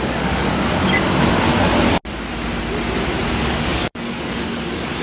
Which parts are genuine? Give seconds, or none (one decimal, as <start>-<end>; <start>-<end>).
1.5-3.3